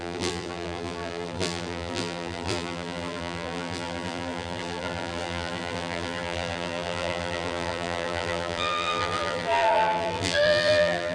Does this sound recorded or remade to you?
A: remade